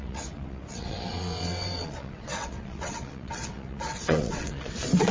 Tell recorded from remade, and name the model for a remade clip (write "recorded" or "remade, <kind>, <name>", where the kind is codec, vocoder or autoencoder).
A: remade, vocoder, WaveNeXt